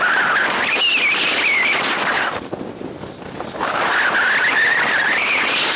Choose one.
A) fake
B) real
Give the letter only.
B